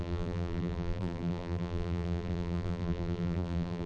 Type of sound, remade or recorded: remade